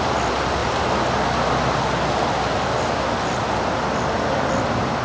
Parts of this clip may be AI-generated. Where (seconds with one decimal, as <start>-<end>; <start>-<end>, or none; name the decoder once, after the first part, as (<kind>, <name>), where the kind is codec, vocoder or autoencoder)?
none